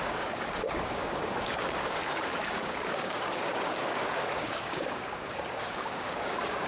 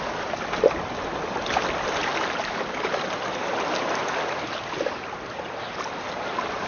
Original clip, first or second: second